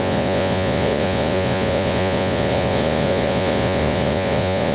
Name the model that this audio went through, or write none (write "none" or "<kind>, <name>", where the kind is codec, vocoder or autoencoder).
vocoder, Vocos